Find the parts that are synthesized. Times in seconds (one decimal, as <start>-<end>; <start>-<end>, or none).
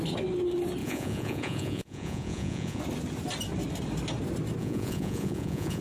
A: 0.8-2.8; 4.6-5.8